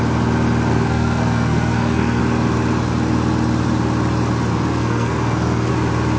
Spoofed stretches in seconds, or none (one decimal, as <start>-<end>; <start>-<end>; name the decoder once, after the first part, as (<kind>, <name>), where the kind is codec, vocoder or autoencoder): 0.7-2.2 (codec, SNAC); 4.5-5.7